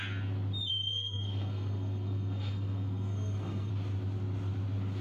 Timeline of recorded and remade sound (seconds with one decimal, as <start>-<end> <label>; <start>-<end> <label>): 0.0-0.7 recorded; 0.7-3.7 remade; 3.7-5.0 recorded

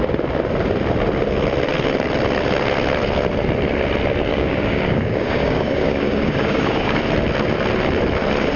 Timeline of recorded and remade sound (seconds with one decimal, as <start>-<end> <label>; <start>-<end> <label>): 0.0-4.3 recorded; 4.3-7.0 remade; 7.0-8.6 recorded

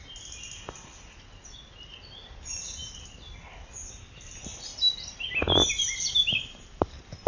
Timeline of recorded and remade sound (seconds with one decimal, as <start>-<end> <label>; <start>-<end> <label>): 0.0-7.3 recorded

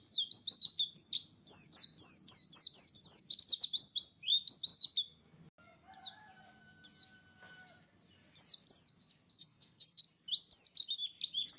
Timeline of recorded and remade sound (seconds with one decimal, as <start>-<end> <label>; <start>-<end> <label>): 0.0-9.4 recorded; 9.4-10.0 remade; 10.0-11.6 recorded

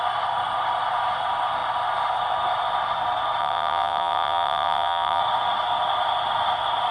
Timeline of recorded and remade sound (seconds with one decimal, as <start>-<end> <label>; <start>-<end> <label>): 0.0-3.4 recorded; 3.4-5.2 remade; 5.2-6.9 recorded

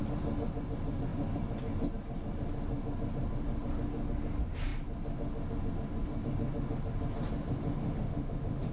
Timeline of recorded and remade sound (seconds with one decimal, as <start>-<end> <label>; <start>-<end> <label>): 0.0-7.8 recorded; 7.8-8.7 remade

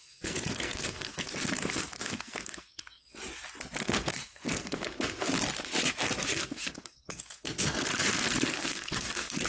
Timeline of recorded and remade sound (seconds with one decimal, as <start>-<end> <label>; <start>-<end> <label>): 0.0-3.2 remade; 3.2-3.8 recorded; 3.8-5.3 remade; 5.3-6.3 recorded; 6.3-9.5 remade